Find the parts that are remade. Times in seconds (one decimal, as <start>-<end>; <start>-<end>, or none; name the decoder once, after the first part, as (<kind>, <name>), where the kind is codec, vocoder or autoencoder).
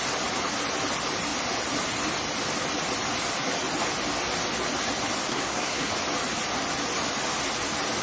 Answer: 5.3-5.9 (codec, SNAC)